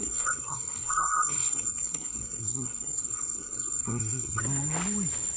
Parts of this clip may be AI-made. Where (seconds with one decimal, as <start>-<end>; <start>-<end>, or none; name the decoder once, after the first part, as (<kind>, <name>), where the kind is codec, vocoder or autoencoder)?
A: 0.0-4.4 (codec, SNAC)